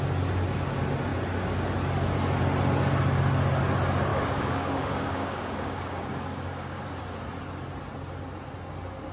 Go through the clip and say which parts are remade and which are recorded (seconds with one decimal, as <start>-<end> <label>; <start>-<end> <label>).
0.0-4.1 recorded; 4.1-7.0 remade; 7.0-9.1 recorded